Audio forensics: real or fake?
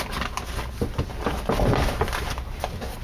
real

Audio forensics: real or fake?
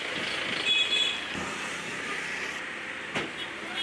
real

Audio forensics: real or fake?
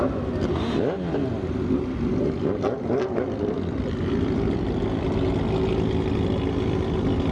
real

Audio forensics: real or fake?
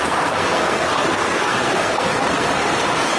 fake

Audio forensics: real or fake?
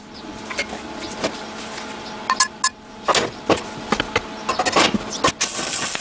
real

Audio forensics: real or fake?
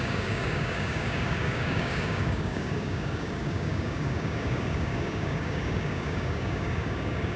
fake